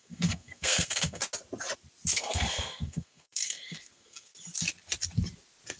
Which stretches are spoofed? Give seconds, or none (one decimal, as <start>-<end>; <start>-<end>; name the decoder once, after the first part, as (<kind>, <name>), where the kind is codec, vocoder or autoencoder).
0.0-1.2 (codec, SNAC); 2.1-4.3